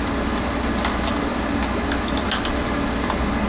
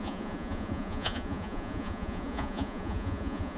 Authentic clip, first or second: first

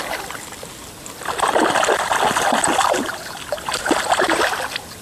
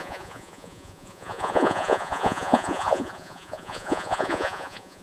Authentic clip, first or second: first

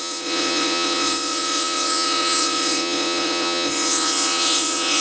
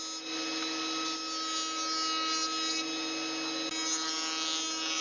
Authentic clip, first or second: second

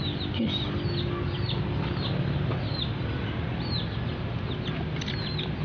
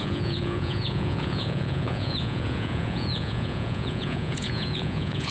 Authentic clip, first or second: first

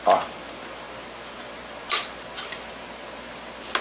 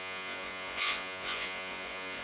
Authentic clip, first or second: first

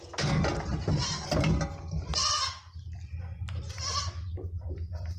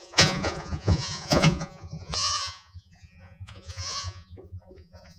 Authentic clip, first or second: first